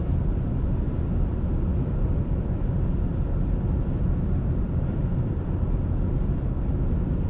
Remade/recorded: remade